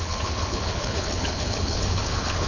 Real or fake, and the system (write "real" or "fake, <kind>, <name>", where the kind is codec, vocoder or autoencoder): fake, codec, HILCodec